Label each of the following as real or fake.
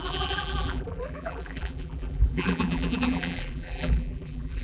fake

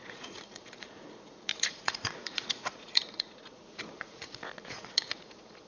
fake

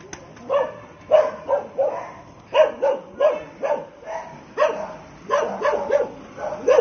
real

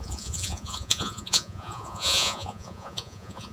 fake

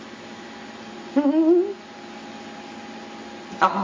real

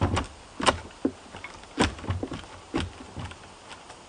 real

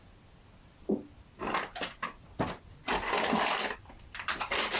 real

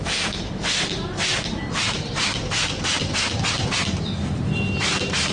fake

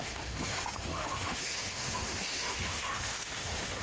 fake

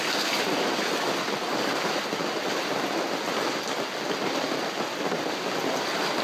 real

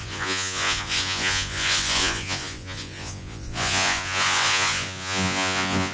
fake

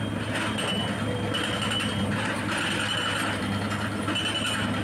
real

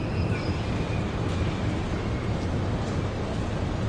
real